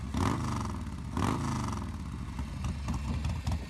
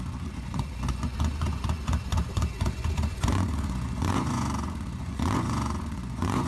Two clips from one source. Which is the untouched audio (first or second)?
first